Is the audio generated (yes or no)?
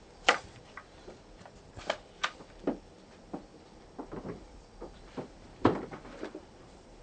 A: yes